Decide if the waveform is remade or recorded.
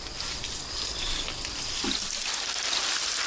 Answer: recorded